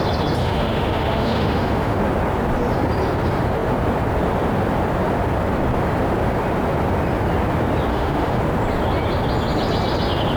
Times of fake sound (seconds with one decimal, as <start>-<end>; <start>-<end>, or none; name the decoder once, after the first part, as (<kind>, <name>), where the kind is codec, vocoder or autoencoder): 0.4-2.0 (autoencoder, DAC-VAE); 7.9-8.4